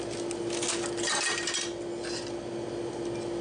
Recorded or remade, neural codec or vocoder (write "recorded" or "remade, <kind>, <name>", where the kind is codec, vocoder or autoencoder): recorded